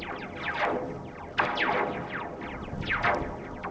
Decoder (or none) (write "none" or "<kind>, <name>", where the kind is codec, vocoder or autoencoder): none